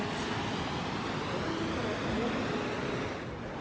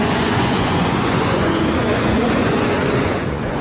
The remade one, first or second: second